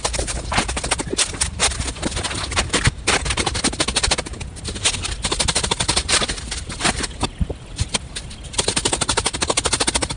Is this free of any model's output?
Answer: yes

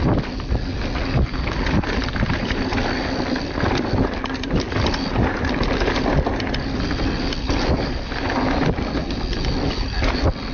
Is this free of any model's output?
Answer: yes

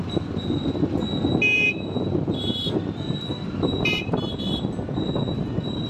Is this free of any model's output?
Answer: yes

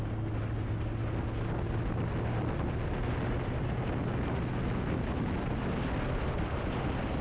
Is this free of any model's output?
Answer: yes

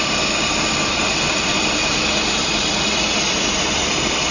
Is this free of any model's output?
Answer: yes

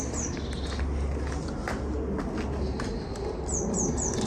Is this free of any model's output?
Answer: yes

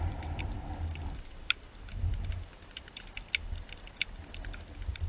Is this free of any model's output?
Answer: no